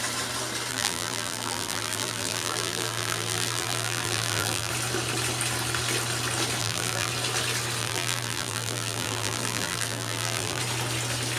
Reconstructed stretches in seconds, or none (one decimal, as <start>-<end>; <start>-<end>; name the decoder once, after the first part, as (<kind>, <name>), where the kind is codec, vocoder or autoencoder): 0.7-4.7 (vocoder, BigVGAN v2); 6.6-7.1; 7.8-10.6